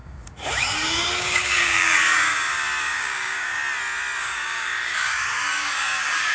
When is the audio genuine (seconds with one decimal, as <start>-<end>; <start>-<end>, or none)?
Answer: 3.6-4.2